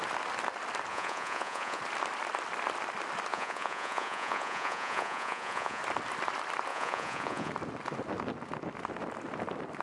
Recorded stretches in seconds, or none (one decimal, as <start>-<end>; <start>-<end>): 0.0-0.9; 1.8-3.3; 5.8-6.7; 7.5-9.8

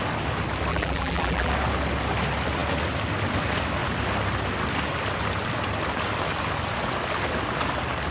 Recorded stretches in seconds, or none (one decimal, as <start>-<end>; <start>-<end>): 0.0-0.7; 1.5-8.1